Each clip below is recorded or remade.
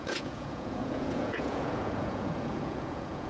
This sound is remade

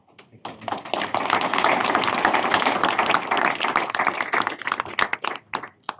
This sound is recorded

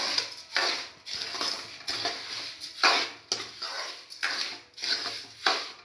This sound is recorded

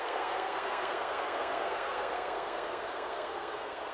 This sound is remade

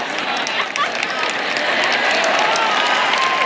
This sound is recorded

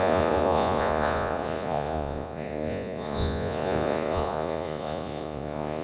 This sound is remade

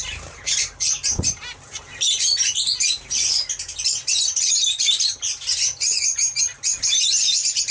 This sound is remade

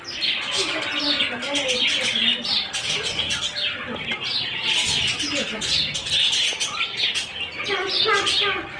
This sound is recorded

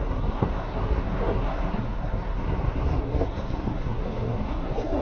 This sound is remade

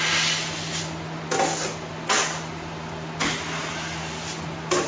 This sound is recorded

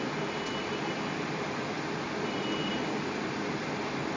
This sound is recorded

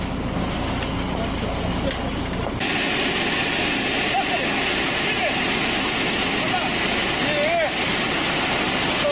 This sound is recorded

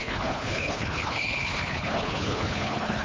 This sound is remade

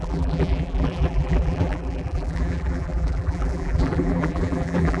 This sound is remade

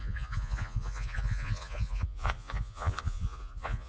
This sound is remade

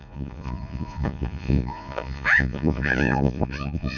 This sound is remade